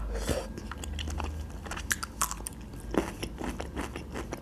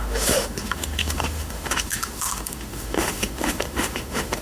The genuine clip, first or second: first